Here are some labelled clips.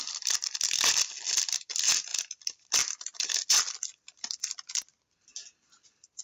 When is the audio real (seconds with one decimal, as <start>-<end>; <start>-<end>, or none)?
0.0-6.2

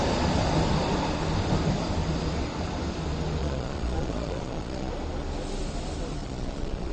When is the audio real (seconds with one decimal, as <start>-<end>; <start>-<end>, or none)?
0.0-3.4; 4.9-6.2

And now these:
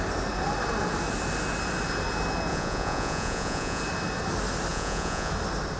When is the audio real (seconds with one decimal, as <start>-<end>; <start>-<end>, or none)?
0.0-2.5; 3.8-4.7; 5.3-5.8

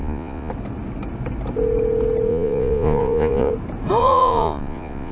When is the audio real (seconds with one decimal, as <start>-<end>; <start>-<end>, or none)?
0.5-2.3; 3.5-4.0